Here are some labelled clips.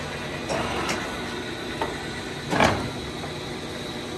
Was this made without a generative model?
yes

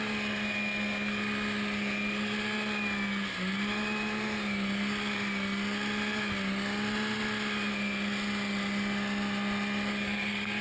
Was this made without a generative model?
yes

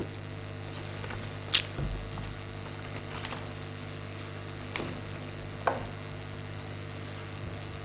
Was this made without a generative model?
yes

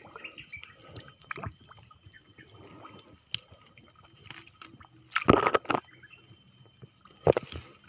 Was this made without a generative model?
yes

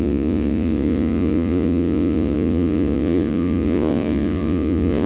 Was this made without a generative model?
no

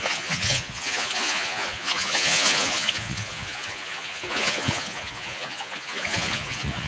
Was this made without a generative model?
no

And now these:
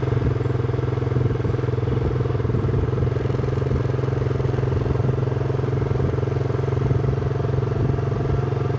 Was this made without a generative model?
yes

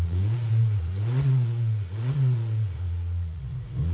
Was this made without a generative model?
no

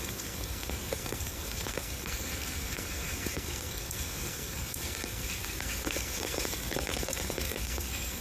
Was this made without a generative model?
no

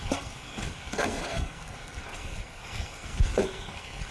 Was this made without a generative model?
no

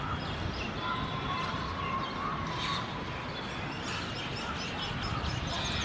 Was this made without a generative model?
yes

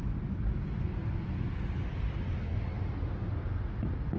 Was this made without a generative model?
yes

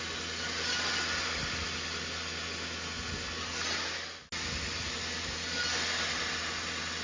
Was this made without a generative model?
yes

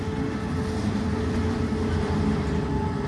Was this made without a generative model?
yes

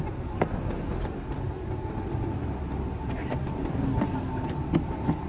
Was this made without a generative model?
yes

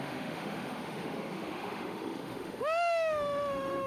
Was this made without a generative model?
no